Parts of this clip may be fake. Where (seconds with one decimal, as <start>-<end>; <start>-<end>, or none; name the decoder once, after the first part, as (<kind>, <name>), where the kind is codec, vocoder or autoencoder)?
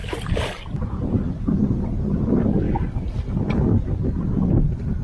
none